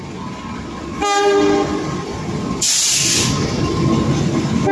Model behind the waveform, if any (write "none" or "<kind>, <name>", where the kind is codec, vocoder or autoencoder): none